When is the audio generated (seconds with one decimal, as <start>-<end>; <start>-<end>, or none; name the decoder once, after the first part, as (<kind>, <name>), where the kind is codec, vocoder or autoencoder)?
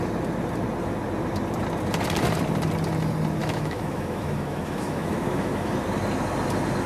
3.4-5.7 (autoencoder, DAC-VAE)